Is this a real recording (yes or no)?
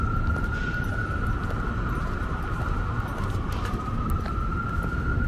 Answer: yes